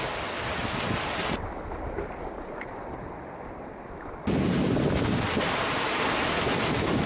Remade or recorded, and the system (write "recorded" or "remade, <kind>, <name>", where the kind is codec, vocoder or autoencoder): recorded